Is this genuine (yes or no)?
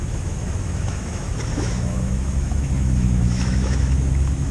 no